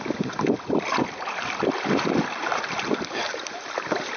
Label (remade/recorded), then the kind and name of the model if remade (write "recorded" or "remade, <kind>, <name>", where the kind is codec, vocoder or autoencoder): recorded